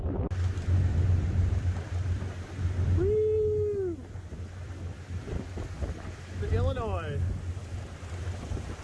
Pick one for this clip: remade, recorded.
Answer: recorded